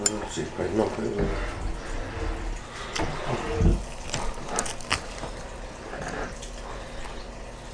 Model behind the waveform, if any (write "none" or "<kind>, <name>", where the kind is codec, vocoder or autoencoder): none